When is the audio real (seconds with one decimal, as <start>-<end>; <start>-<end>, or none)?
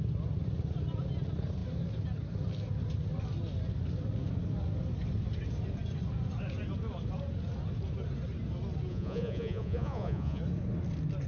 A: 0.0-8.9; 10.4-11.3